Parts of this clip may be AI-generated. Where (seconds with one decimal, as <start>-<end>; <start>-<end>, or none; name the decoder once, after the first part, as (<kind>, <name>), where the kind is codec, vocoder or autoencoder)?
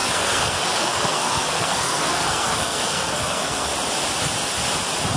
0.0-3.7 (codec, SNAC)